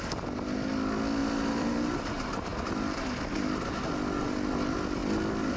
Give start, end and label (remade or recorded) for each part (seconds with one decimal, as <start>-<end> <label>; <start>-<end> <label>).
0.0-1.2 recorded; 1.2-1.7 remade; 1.7-2.5 recorded; 2.5-3.0 remade; 3.0-5.0 recorded; 5.0-5.6 remade